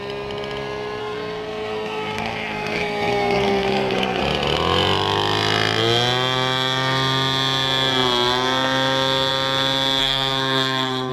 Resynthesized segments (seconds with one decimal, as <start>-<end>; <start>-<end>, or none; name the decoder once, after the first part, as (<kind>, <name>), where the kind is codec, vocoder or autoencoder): 1.0-4.2 (codec, SNAC); 10.0-11.1